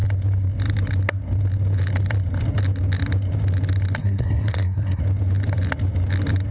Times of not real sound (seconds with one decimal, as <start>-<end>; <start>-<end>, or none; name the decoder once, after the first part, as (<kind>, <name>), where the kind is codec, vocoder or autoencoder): 4.0-5.0 (codec, SNAC)